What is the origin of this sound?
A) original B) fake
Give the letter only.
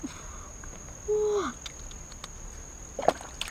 A